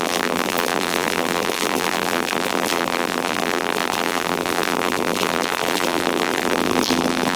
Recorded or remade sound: remade